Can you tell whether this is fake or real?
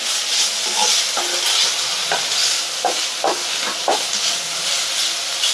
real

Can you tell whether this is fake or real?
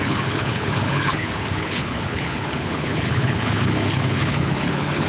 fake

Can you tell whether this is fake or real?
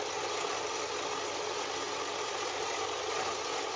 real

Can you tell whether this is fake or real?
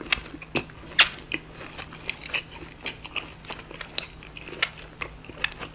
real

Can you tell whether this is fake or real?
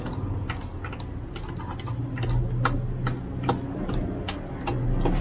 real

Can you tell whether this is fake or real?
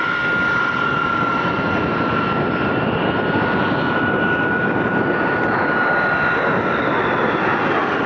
real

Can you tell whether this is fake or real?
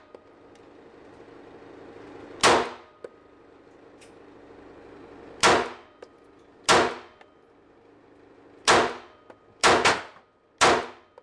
real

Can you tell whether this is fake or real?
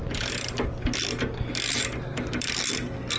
real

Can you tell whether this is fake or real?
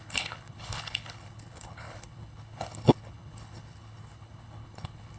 fake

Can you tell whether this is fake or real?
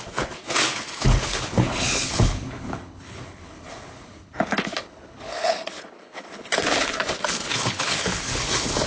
fake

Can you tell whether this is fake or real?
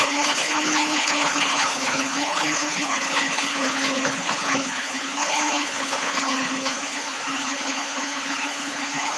fake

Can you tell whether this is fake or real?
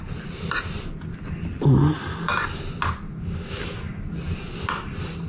real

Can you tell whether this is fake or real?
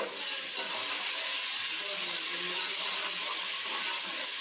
real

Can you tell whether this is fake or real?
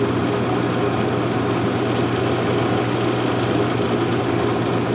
real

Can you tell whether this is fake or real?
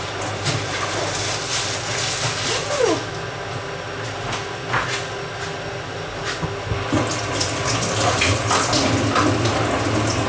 real